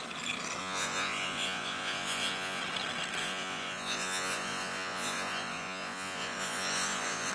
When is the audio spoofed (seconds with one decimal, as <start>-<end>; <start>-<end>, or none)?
0.6-2.6; 3.2-7.3